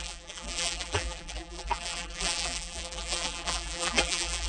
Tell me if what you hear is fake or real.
fake